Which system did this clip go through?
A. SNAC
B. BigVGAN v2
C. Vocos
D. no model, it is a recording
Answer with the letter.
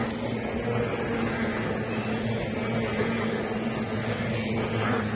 D